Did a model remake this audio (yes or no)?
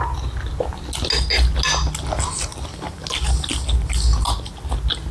no